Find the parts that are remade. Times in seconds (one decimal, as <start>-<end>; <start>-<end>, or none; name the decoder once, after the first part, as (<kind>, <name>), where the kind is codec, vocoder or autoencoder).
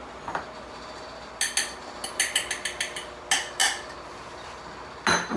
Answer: none